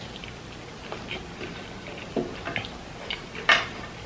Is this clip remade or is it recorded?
recorded